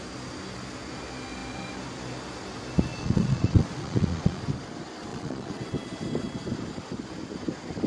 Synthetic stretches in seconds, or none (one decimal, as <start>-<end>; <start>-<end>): 2.9-4.4; 5.1-5.6